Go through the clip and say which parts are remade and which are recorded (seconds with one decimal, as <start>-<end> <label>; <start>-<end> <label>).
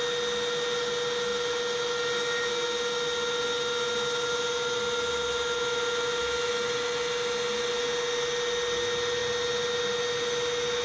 0.0-10.8 recorded